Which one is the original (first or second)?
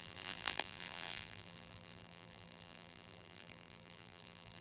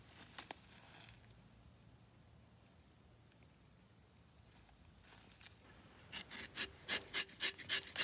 second